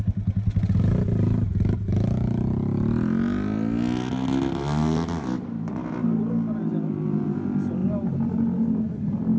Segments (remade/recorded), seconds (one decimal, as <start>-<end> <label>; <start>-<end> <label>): 0.0-9.4 recorded